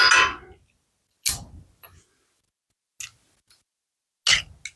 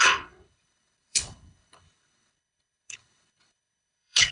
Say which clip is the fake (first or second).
second